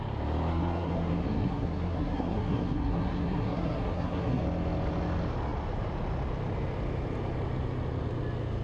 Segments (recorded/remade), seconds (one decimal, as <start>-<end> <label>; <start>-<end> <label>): 0.0-0.5 recorded; 0.5-4.4 remade; 4.4-8.6 recorded

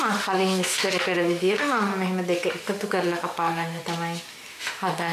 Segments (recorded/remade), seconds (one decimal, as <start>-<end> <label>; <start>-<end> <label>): 0.0-1.9 remade; 1.9-2.5 recorded; 2.5-3.8 remade; 3.8-4.5 recorded; 4.5-5.1 remade

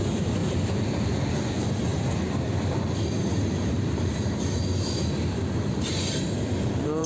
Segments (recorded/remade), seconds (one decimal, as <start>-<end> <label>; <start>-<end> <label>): 0.0-0.4 remade; 0.4-1.3 recorded; 1.3-7.1 remade

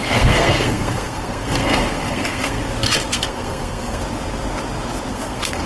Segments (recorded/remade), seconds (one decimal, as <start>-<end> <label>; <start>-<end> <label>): 0.0-2.6 remade; 2.6-3.1 recorded; 3.1-4.0 remade; 4.0-5.1 recorded; 5.1-5.7 remade

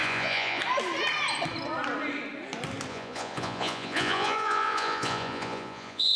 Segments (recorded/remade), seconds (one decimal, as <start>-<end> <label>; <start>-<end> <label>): 0.0-0.6 remade; 0.6-2.9 recorded; 2.9-6.2 remade

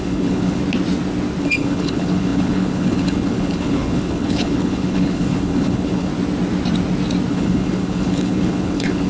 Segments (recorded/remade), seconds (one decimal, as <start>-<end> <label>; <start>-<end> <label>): 0.0-0.6 remade; 0.6-1.4 recorded; 1.4-6.1 remade; 6.1-7.3 recorded; 7.3-9.1 remade

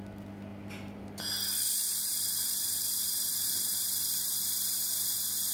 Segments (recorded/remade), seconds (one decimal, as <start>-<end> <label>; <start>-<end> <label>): 0.0-0.5 recorded; 0.5-1.2 remade; 1.2-2.1 recorded; 2.1-5.5 remade